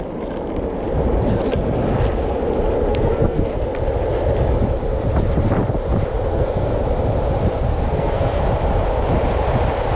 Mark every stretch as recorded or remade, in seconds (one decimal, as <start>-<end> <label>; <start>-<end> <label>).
0.0-2.9 recorded; 2.9-3.5 remade; 3.5-6.3 recorded; 6.3-6.8 remade; 6.8-7.7 recorded; 7.7-8.4 remade; 8.4-10.0 recorded